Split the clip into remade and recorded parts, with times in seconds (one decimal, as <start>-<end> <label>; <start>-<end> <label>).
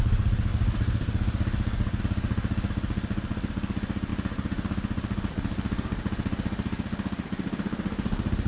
0.0-0.5 recorded; 0.5-2.0 remade; 2.0-8.5 recorded